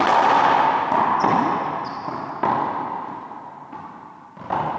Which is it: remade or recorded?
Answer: recorded